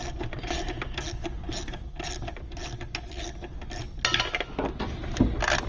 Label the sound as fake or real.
real